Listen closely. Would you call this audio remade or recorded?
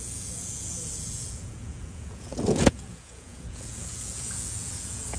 remade